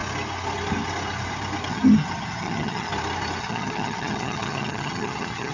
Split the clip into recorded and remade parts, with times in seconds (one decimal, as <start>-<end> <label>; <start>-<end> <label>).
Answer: 0.0-1.7 recorded; 1.7-2.9 remade; 2.9-3.4 recorded; 3.4-5.5 remade